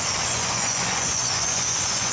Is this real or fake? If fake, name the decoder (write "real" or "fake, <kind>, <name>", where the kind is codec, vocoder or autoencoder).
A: fake, vocoder, Vocos